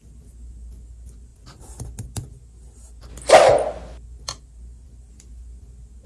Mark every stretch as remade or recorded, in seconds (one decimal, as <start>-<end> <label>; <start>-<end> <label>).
0.0-6.1 recorded

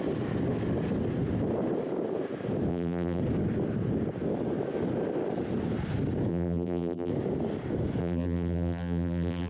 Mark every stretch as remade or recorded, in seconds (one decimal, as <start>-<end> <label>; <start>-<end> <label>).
0.0-2.7 recorded; 2.7-3.2 remade; 3.2-6.3 recorded; 6.3-7.1 remade; 7.1-8.0 recorded; 8.0-9.5 remade

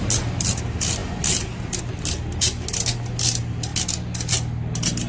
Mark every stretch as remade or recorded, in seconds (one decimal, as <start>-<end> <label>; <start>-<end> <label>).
0.0-5.1 recorded

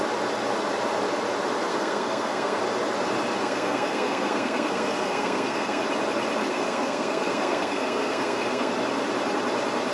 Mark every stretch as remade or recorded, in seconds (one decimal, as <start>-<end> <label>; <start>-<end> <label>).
0.0-1.7 recorded; 1.7-2.6 remade; 2.6-3.4 recorded; 3.4-5.8 remade; 5.8-6.4 recorded; 6.4-8.7 remade; 8.7-9.9 recorded

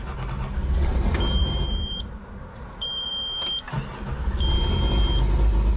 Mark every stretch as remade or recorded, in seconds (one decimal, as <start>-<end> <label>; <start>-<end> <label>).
0.0-1.4 recorded; 1.4-3.1 remade; 3.1-5.8 recorded